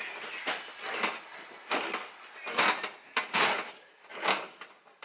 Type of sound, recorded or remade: recorded